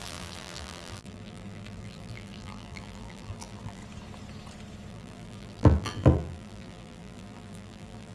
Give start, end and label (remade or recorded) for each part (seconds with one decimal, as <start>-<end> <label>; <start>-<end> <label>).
0.0-3.8 remade; 3.8-4.9 recorded; 4.9-8.1 remade